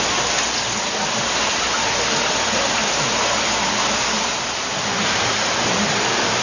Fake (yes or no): no